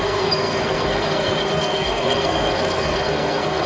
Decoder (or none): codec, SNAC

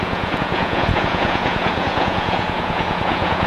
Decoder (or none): vocoder, Vocos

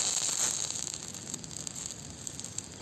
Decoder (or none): none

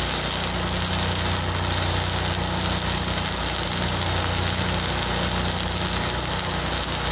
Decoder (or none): none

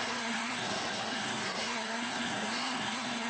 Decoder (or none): codec, SNAC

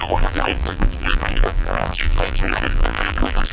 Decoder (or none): vocoder, BigVGAN v2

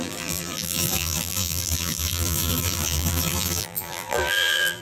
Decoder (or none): vocoder, BigVGAN v2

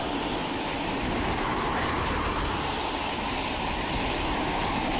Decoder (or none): none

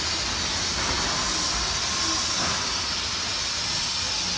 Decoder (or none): none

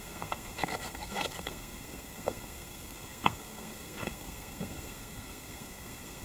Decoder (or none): codec, SNAC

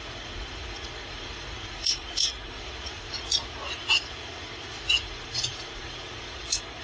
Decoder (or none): vocoder, Vocos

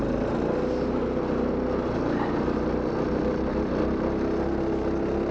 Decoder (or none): none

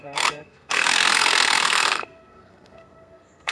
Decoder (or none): codec, SNAC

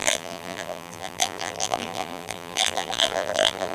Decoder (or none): vocoder, BigVGAN v2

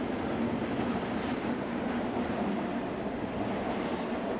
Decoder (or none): none